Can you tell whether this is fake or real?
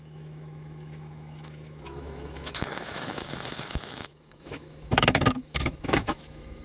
fake